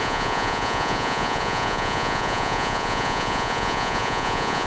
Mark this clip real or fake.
fake